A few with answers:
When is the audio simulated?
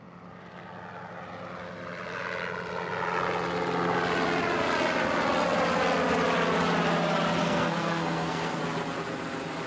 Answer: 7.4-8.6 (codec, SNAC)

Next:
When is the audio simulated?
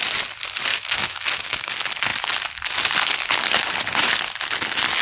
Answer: 0.7-1.7 (autoencoder, DAC-VAE)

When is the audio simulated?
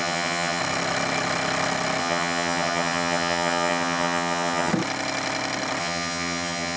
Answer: 0.0-0.6 (vocoder, HiFi-GAN); 2.0-4.7; 5.8-6.8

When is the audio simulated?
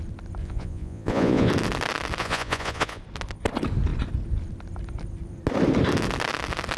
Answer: 0.4-1.5 (vocoder, Vocos); 2.2-3.0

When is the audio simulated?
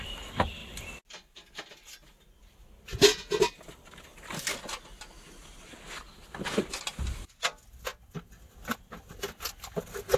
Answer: none